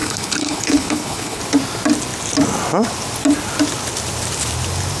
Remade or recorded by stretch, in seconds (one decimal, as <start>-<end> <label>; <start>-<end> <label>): 0.0-1.4 remade; 1.4-5.0 recorded